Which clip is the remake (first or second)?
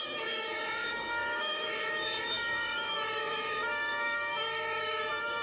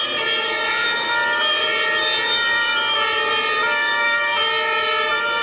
first